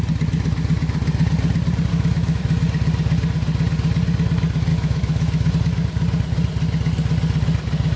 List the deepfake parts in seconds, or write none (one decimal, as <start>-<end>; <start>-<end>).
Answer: 1.9-2.4; 4.7-5.5